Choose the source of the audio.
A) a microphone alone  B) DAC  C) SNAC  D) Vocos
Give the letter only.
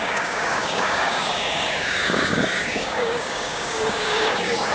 B